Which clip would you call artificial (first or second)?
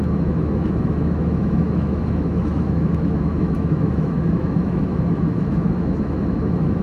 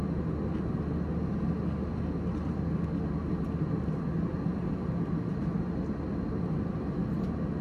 first